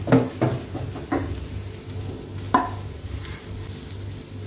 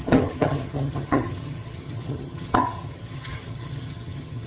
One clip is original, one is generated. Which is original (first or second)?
first